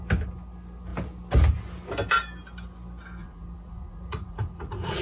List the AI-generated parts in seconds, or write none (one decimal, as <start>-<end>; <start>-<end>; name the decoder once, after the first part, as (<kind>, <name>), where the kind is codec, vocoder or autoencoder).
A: 3.2-5.0 (vocoder, Vocos)